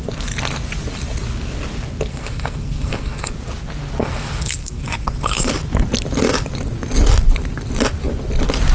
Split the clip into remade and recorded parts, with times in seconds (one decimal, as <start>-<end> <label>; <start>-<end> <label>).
0.0-2.1 recorded; 2.1-3.3 remade; 3.3-4.0 recorded; 4.0-5.5 remade; 5.5-8.7 recorded